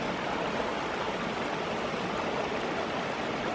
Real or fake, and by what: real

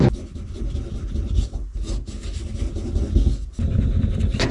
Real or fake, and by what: real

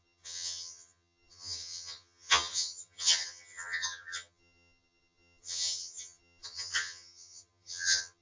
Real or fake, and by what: fake, vocoder, HiFi-GAN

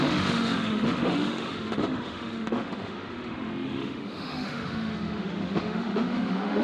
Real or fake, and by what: fake, autoencoder, DAC-VAE